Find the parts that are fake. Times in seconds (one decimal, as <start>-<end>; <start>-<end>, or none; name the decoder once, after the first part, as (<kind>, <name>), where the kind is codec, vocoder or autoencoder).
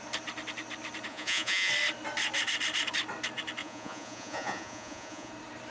1.1-1.7 (vocoder, Vocos); 3.6-5.3